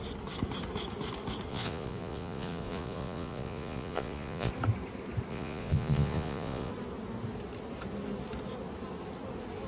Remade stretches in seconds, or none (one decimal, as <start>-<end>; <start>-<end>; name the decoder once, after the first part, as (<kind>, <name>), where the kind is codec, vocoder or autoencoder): 1.5-4.5 (vocoder, Vocos); 5.3-6.7